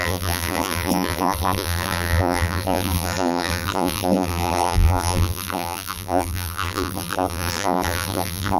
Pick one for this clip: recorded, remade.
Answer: remade